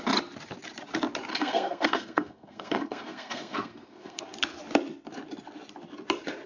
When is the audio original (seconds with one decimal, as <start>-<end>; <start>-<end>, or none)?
0.0-1.3; 4.2-6.5